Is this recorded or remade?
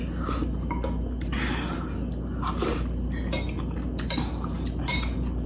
recorded